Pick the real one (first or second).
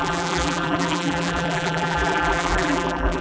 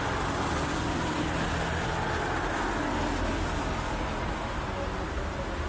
second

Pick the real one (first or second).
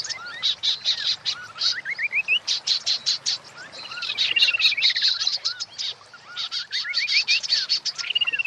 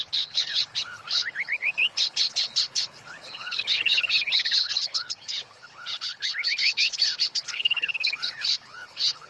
first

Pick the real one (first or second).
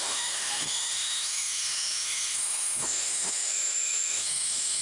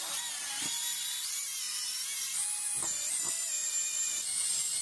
second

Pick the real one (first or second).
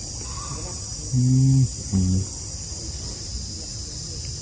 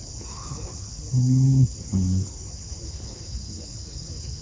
first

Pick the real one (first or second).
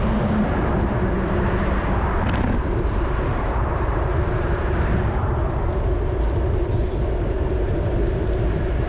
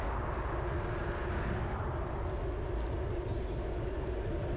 second